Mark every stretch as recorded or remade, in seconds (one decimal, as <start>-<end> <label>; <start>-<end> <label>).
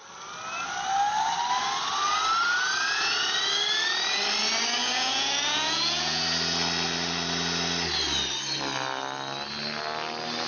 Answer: 0.0-4.8 recorded; 4.8-6.2 remade; 6.2-10.5 recorded